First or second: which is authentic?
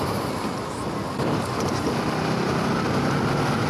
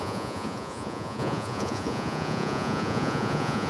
first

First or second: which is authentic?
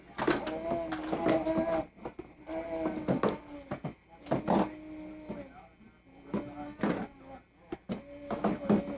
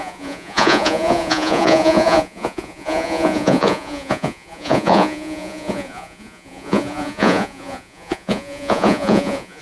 first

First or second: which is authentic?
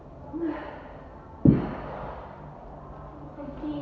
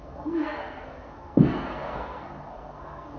first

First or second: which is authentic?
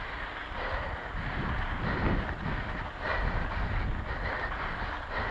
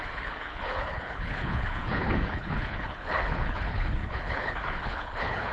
first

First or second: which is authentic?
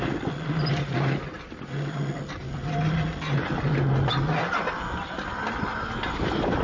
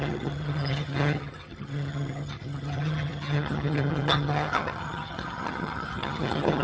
first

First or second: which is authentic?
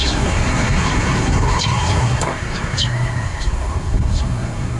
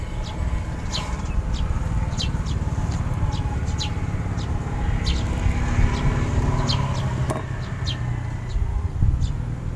second